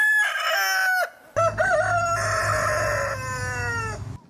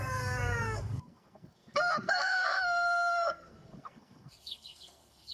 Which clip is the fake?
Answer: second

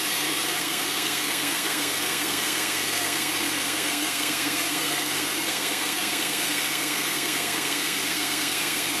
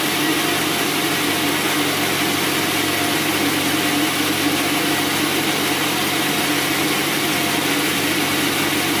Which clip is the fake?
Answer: first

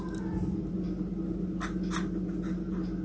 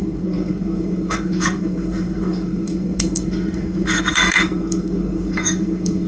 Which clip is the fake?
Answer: second